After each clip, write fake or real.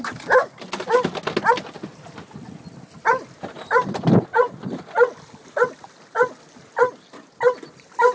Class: real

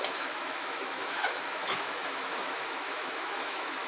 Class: fake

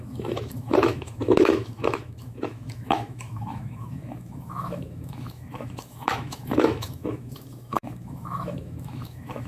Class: fake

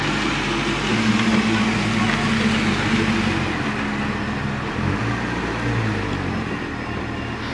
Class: real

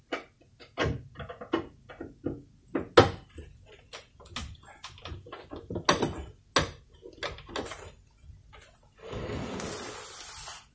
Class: real